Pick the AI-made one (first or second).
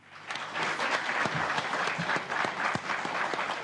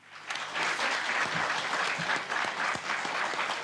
first